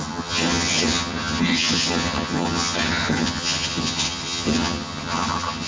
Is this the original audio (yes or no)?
no